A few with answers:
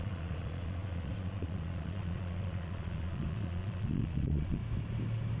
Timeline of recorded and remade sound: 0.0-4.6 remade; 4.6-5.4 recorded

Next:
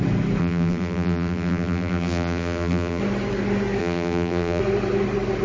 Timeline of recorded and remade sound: 0.0-0.4 recorded; 0.4-3.0 remade; 3.0-3.8 recorded; 3.8-4.6 remade; 4.6-5.4 recorded

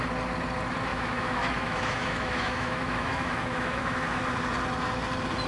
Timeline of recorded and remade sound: 0.0-0.9 recorded; 0.9-4.2 remade; 4.2-5.5 recorded

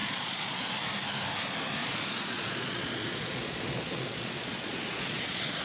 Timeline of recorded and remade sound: 0.0-0.7 remade; 0.7-1.8 recorded; 1.8-5.6 remade

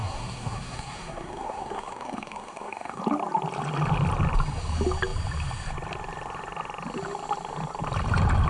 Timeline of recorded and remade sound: 0.0-3.0 remade; 3.0-8.5 recorded

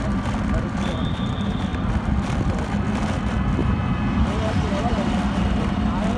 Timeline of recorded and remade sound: 0.0-1.7 remade; 1.7-2.4 recorded; 2.4-6.2 remade